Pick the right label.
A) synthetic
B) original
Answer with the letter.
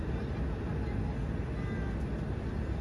B